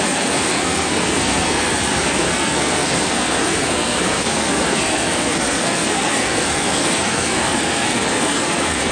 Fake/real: fake